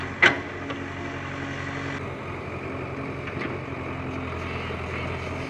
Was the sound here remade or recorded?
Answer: recorded